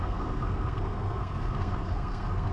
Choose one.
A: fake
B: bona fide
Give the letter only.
A